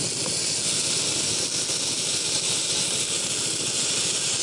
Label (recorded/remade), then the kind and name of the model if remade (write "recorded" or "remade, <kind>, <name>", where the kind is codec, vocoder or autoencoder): recorded